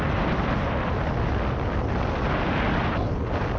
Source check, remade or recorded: recorded